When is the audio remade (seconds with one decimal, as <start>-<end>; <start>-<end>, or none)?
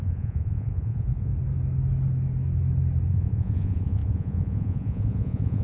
0.0-1.3; 3.1-5.6